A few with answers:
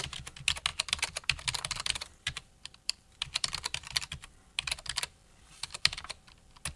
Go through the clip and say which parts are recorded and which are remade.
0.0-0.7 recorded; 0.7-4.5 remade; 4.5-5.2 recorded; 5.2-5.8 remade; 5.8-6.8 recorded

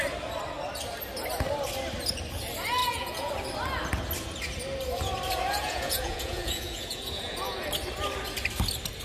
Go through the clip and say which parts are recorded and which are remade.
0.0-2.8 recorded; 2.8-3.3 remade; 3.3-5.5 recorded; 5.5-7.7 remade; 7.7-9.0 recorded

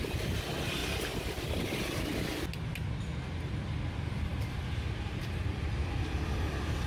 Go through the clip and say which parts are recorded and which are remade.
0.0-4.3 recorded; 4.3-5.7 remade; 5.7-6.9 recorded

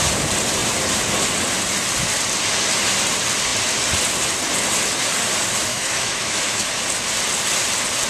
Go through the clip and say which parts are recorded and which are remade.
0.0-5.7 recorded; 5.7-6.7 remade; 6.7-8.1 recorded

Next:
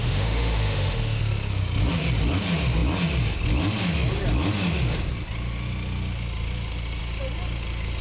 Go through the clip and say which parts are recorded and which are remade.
0.0-1.2 remade; 1.2-8.0 recorded

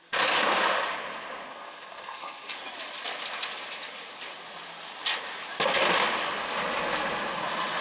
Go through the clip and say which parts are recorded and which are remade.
0.0-1.5 recorded; 1.5-2.6 remade; 2.6-7.8 recorded

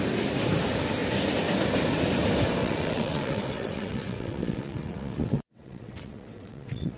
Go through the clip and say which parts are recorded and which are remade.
0.0-2.6 recorded; 2.6-7.0 remade

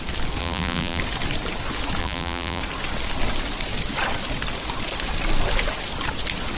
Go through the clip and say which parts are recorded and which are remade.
0.0-0.4 recorded; 0.4-1.0 remade; 1.0-2.0 recorded; 2.0-2.6 remade; 2.6-6.6 recorded